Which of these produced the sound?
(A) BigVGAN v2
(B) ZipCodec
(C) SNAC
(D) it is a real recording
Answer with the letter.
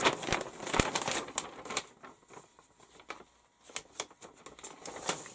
D